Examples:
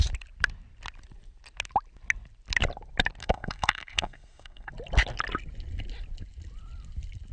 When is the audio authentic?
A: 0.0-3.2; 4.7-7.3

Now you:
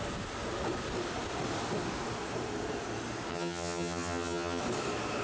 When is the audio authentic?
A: 0.0-3.3; 4.6-5.2

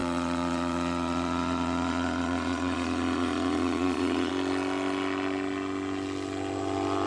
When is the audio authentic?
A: 4.3-7.1

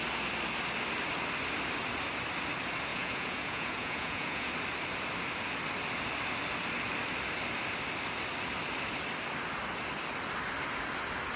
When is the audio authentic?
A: 0.0-2.9; 4.5-11.4